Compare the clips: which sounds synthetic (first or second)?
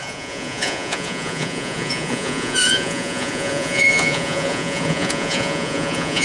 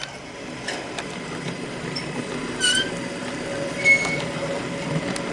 first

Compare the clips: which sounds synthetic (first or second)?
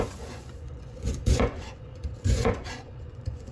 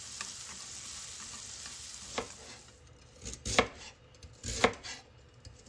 first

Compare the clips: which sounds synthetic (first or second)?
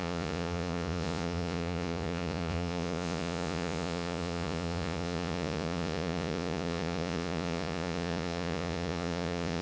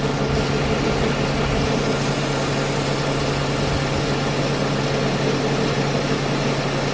first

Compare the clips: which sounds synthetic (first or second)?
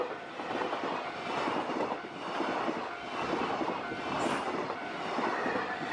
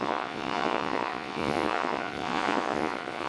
second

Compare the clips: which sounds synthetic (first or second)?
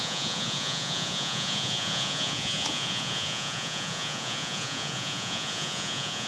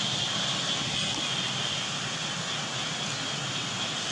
first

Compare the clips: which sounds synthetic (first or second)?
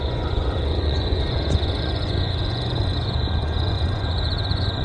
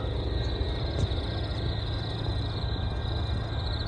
first